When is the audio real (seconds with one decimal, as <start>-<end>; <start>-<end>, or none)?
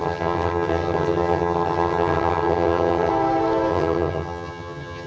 3.1-3.7